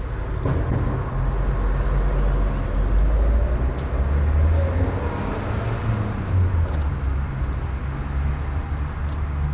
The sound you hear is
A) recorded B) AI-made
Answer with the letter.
A